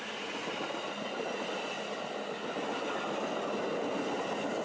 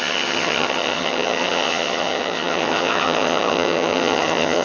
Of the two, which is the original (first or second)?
first